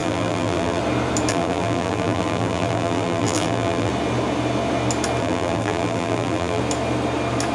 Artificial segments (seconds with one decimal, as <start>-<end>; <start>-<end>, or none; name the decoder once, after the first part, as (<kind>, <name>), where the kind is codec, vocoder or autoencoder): 0.0-0.8 (vocoder, BigVGAN v2); 1.3-3.9; 5.2-6.6

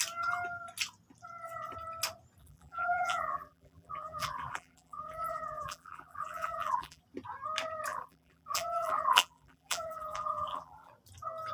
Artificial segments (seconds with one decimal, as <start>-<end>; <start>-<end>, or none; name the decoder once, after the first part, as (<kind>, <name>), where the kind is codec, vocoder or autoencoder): 2.4-7.0 (vocoder, BigVGAN v2); 7.9-10.9

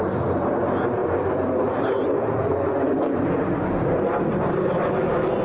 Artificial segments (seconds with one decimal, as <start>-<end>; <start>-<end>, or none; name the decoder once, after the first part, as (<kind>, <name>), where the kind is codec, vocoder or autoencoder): none

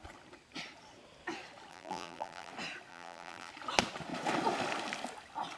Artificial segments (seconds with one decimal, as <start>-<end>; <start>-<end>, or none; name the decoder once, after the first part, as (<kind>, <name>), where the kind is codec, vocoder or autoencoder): 1.7-2.5 (vocoder, BigVGAN v2); 2.9-3.5

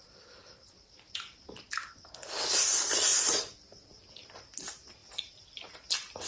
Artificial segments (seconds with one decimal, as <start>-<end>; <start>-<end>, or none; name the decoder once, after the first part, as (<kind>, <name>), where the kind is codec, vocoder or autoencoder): none

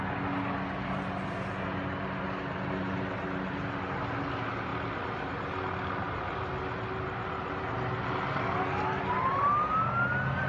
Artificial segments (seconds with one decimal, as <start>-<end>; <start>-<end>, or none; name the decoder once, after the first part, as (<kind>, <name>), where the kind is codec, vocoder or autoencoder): none